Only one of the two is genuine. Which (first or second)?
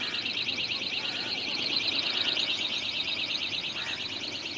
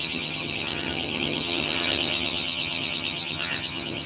first